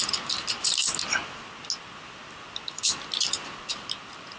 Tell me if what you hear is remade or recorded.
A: recorded